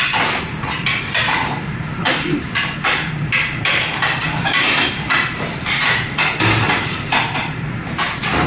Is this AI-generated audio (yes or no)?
yes